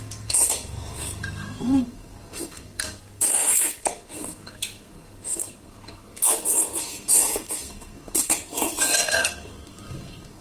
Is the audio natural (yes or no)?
no